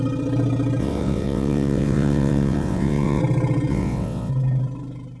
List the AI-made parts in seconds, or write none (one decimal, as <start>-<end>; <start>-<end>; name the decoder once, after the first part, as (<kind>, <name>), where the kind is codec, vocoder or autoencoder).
0.8-3.2 (vocoder, WaveNeXt); 3.7-4.3